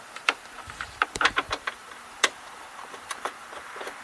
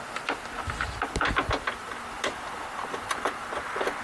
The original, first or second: second